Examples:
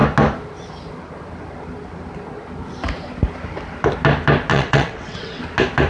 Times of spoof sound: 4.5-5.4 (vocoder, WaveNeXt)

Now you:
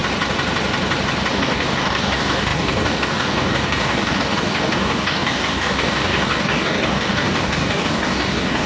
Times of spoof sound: 1.3-8.7 (codec, DAC)

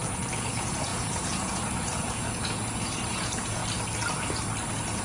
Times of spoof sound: 0.0-3.6 (vocoder, Vocos)

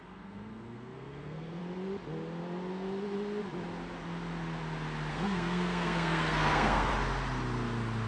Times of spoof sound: 0.0-1.6 (codec, SNAC); 5.1-6.9

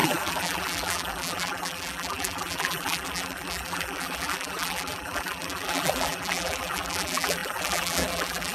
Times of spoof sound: 0.0-8.5 (vocoder, BigVGAN v2)

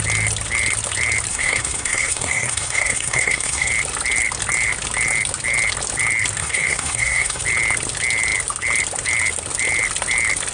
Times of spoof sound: 1.3-3.7 (codec, SNAC); 6.4-7.4

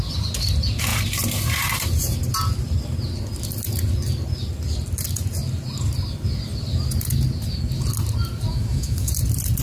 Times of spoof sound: 8.5-9.1 (autoencoder, DAC-VAE)